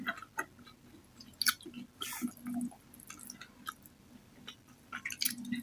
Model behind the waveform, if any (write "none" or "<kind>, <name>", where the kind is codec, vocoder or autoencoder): none